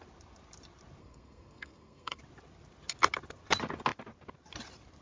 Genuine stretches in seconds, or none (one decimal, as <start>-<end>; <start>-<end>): 0.0-1.0; 2.2-5.0